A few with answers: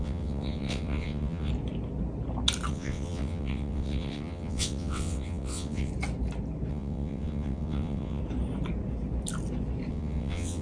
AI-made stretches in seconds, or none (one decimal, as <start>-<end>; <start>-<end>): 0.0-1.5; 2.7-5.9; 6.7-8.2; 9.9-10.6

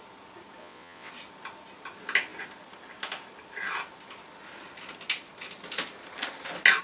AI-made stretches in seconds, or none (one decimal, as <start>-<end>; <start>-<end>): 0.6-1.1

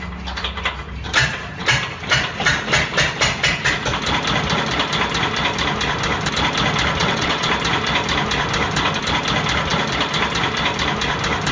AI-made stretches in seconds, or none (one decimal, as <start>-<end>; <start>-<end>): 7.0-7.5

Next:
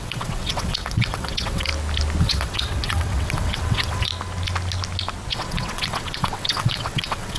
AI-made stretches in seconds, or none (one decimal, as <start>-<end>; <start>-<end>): 0.0-1.7; 2.2-4.1; 5.3-7.4